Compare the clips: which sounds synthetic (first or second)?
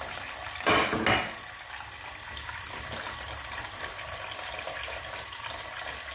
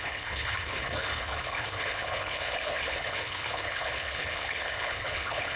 second